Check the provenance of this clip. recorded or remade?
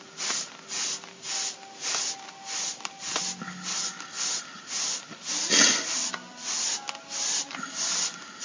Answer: recorded